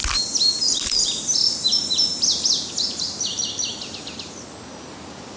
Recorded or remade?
recorded